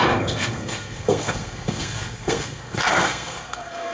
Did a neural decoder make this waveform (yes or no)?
yes